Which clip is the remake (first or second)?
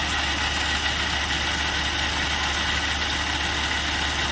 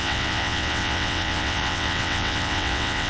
second